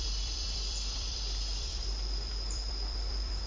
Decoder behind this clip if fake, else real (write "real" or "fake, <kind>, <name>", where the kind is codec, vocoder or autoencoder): fake, vocoder, BigVGAN v2